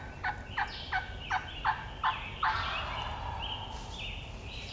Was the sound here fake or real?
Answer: real